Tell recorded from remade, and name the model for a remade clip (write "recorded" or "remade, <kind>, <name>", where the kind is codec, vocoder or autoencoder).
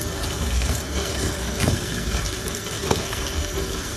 remade, codec, SNAC